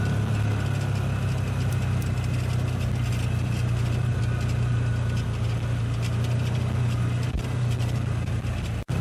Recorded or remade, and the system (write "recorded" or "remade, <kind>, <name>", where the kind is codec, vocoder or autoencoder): recorded